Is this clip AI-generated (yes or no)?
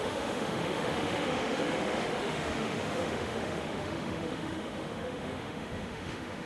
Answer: yes